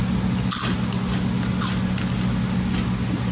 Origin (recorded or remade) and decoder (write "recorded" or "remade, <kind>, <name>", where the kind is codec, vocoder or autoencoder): recorded